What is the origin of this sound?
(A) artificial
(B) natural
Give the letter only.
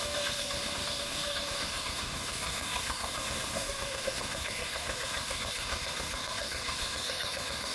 A